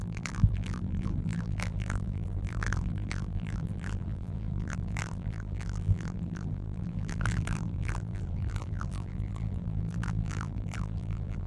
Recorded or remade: remade